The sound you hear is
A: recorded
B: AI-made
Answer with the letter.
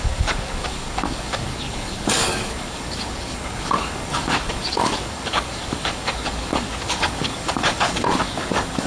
B